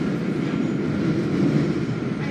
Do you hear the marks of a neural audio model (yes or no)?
no